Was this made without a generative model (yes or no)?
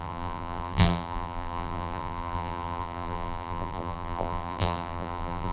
no